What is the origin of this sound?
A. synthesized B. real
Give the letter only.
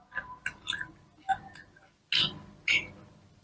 B